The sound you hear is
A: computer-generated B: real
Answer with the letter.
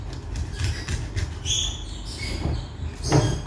B